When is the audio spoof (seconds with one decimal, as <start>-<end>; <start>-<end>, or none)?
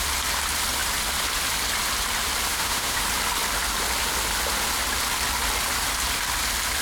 2.5-3.0